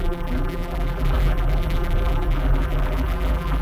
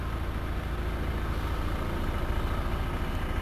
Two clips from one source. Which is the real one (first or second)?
second